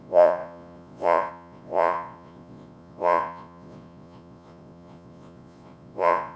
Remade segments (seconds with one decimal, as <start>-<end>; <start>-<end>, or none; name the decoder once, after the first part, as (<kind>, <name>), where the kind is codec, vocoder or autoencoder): 0.0-6.4 (vocoder, Vocos)